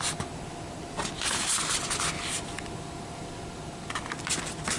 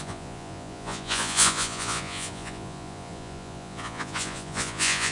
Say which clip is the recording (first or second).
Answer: first